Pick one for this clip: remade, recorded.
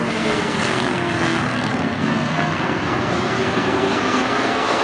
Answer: remade